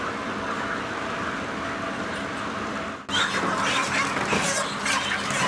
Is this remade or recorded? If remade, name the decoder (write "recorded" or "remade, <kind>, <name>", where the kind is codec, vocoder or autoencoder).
recorded